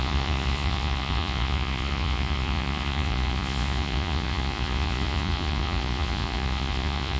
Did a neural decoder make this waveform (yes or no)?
yes